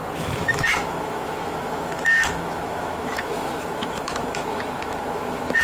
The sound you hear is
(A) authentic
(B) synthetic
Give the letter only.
B